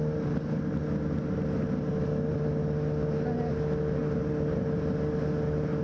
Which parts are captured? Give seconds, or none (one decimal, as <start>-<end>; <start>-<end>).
0.0-5.8